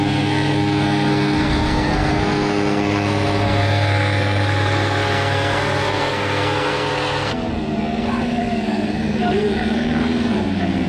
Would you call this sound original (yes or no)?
no